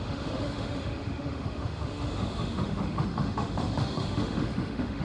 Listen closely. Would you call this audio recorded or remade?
remade